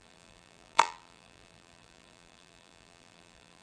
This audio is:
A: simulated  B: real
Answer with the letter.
A